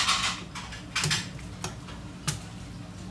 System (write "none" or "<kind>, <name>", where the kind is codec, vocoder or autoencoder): none